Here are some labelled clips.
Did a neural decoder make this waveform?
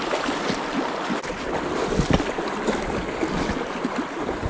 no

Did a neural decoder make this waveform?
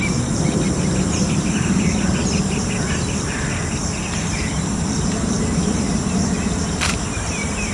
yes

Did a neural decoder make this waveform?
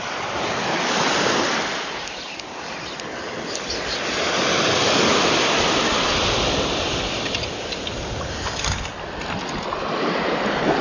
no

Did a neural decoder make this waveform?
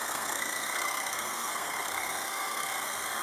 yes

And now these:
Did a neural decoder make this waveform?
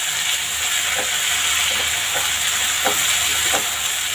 no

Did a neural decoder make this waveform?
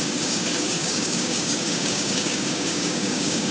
yes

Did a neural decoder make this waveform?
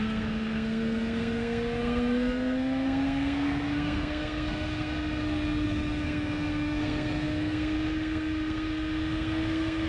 yes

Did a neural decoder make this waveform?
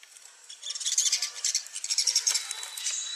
yes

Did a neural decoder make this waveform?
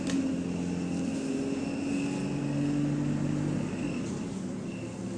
no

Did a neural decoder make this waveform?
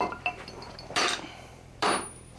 yes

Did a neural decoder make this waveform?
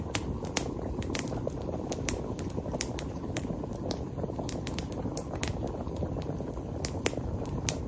no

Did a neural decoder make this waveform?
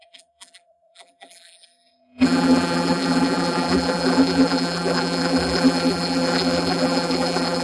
yes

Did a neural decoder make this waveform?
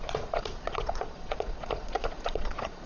yes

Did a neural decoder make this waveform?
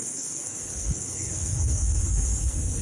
yes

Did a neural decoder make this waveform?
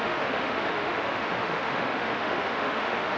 yes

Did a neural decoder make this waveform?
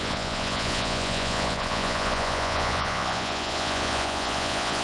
yes